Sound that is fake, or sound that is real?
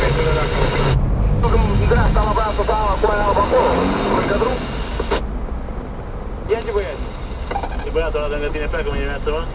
real